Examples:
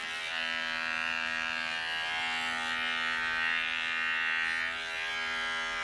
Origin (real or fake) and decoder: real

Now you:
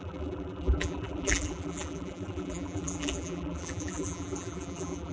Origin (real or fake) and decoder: fake, vocoder, BigVGAN v2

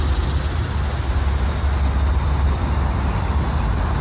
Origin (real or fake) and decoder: real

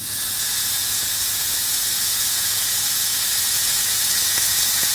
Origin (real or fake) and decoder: fake, vocoder, Vocos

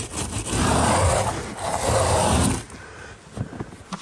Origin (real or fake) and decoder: real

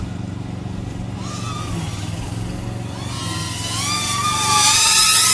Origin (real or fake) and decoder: real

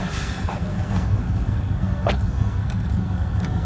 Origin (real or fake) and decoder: fake, codec, SNAC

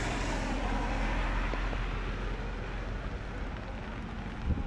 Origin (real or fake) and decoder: real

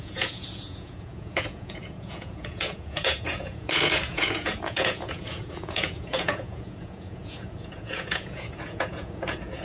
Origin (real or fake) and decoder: fake, vocoder, Vocos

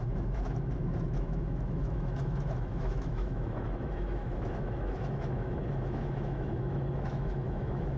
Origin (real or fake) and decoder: fake, autoencoder, DAC-VAE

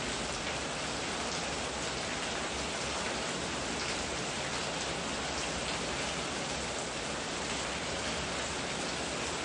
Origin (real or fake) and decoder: real